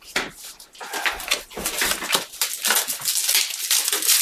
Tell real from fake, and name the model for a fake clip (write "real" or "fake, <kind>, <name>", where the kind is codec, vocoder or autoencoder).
real